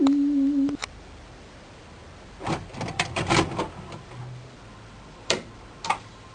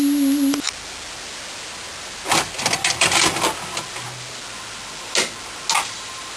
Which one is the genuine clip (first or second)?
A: second